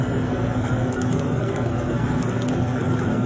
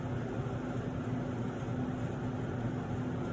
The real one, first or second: second